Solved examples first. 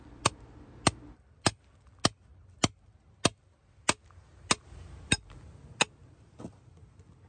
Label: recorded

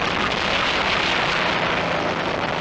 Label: recorded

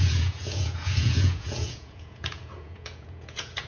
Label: remade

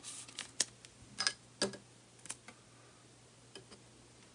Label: recorded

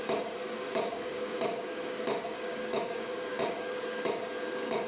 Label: remade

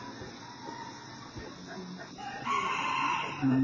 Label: recorded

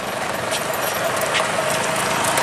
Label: recorded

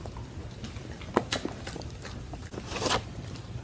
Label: recorded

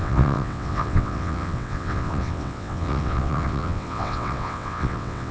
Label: remade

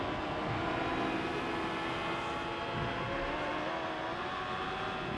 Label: recorded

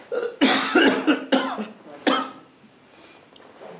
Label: recorded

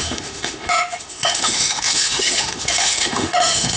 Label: remade